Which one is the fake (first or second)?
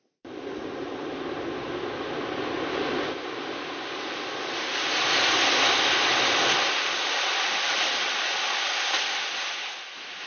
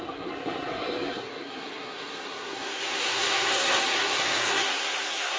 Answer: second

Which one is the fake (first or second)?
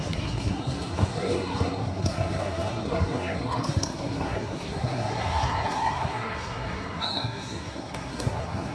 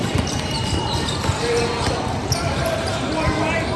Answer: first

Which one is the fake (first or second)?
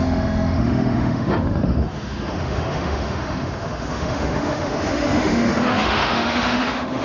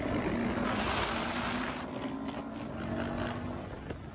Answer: first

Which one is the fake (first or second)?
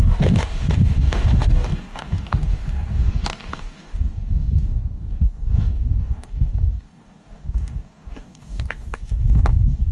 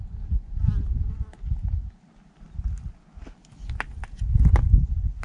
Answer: first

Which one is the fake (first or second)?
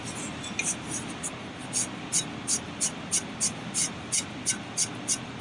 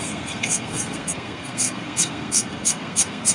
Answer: second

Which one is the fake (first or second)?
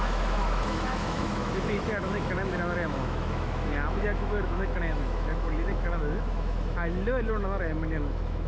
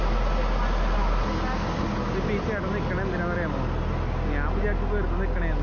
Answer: first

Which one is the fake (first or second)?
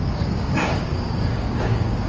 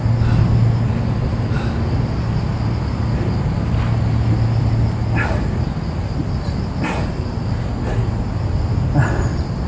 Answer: first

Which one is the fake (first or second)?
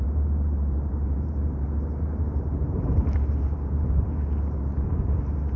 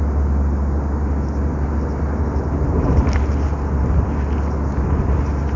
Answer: first